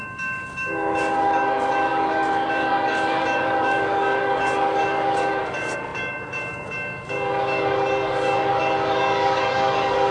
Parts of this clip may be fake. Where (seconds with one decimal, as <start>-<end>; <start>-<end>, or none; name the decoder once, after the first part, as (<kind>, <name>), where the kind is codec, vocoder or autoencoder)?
0.0-10.1 (codec, DAC)